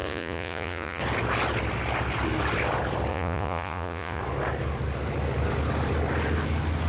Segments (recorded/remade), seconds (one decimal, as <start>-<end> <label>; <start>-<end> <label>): 0.0-1.0 remade; 1.0-3.1 recorded; 3.1-4.2 remade; 4.2-6.9 recorded